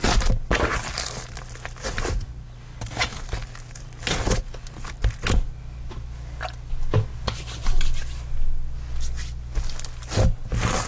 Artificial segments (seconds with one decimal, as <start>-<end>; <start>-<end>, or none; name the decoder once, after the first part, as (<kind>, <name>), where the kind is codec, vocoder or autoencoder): none